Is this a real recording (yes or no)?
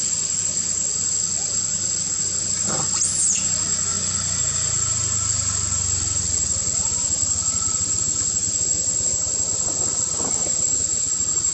yes